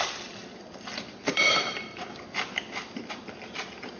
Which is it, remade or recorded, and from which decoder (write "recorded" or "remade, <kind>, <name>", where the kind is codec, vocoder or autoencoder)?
remade, vocoder, BigVGAN v2